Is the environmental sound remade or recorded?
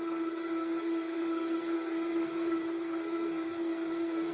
remade